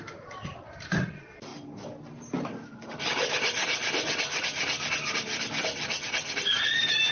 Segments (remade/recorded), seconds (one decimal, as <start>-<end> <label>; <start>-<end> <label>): 0.0-7.1 recorded